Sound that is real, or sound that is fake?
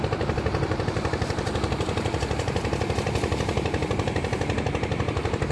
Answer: real